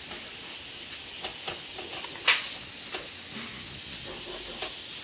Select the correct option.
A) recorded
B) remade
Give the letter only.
A